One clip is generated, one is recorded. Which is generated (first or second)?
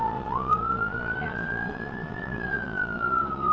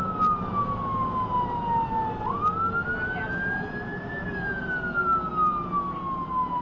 first